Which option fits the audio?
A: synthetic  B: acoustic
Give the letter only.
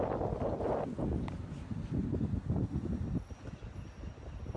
B